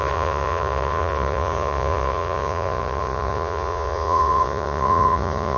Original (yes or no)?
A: no